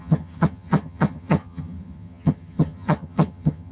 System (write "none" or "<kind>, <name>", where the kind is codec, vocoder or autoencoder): vocoder, HiFi-GAN